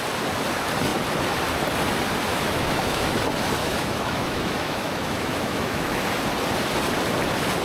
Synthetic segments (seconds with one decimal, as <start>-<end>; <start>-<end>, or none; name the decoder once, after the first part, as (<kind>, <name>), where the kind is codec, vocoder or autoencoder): 2.3-3.2 (autoencoder, DAC-VAE); 3.6-6.0